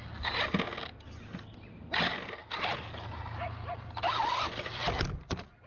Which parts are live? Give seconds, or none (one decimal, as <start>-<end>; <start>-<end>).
0.0-5.7